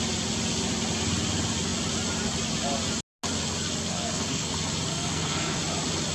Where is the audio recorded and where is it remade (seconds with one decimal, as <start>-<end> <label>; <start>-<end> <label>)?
0.0-3.8 recorded; 3.8-4.5 remade; 4.5-4.9 recorded; 4.9-5.6 remade; 5.6-6.1 recorded